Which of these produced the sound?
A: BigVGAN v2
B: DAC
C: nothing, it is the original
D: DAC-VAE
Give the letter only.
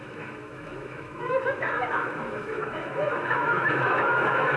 D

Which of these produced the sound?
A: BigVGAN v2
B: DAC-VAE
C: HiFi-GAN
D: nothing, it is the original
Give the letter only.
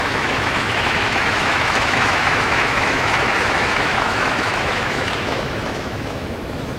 B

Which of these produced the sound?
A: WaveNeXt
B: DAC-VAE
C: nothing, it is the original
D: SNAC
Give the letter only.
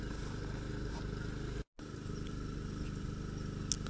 C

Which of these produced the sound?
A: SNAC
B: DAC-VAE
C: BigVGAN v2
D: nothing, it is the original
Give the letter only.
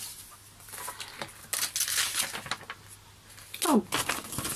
D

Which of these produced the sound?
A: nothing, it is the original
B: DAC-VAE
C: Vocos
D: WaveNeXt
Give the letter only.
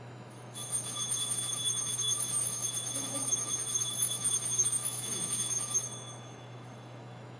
B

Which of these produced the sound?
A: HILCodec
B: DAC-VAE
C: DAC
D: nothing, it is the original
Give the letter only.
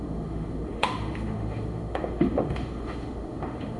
B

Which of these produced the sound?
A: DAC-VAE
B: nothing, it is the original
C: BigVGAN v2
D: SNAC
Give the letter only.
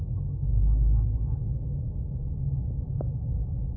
A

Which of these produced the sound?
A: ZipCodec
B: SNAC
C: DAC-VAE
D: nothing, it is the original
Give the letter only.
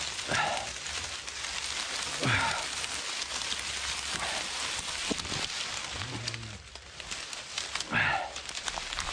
D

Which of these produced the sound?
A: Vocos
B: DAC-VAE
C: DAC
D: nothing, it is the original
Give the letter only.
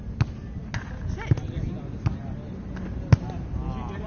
D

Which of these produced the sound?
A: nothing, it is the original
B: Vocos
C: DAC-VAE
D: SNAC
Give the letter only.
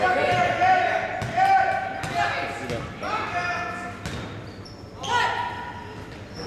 A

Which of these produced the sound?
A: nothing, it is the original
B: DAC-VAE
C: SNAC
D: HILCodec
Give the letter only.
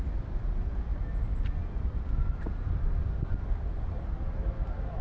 A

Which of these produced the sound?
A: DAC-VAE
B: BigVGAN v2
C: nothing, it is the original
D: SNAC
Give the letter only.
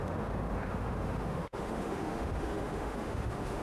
A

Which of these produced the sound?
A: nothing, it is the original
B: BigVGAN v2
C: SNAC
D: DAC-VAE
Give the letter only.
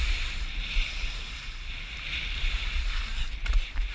A